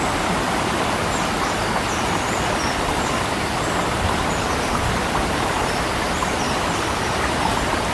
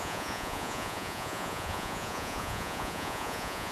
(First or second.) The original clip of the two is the first